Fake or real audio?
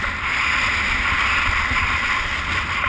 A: real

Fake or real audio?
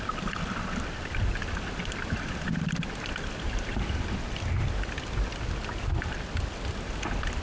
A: real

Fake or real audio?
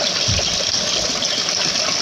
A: real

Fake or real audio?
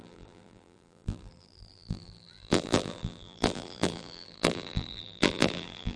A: fake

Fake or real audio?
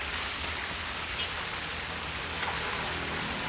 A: real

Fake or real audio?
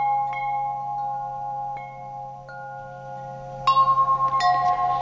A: real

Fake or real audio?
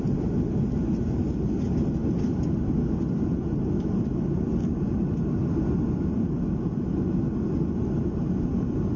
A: real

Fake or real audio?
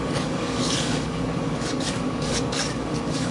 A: fake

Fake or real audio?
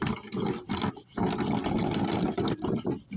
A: fake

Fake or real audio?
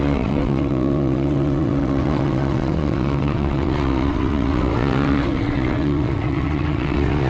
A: fake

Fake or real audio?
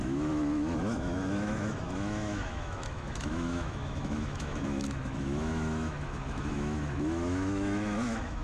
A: fake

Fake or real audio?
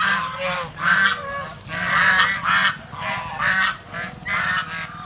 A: real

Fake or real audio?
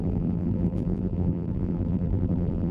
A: fake